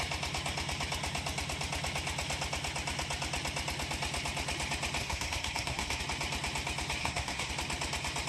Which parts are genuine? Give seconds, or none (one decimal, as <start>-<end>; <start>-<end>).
0.0-5.0; 6.0-7.0; 7.5-8.3